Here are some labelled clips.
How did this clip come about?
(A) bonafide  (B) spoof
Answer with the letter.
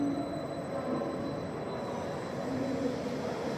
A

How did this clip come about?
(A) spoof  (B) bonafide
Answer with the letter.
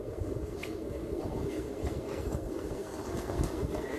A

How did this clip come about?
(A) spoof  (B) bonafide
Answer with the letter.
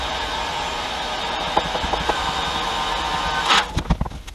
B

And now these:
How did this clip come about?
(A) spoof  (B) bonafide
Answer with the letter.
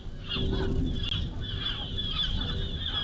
B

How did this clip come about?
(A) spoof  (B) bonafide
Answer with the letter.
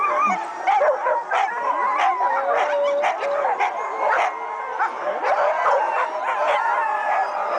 B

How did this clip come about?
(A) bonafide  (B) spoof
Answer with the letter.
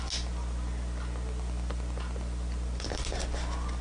A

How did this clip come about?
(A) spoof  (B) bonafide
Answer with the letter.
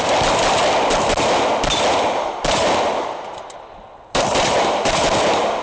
B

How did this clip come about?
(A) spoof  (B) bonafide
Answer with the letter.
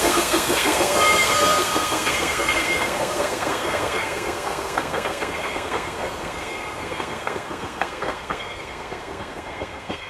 A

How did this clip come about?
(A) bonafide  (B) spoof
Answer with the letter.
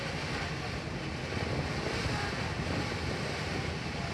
A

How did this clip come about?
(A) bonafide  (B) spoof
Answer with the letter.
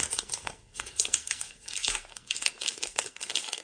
B